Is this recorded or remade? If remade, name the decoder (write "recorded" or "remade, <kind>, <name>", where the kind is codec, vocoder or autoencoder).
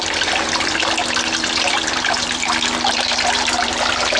remade, vocoder, BigVGAN v2